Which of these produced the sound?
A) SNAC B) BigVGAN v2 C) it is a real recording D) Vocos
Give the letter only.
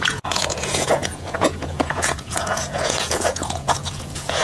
D